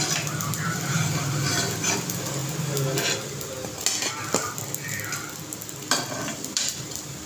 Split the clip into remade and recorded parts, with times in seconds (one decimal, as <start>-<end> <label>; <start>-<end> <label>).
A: 0.0-2.4 remade; 2.4-4.1 recorded; 4.1-7.3 remade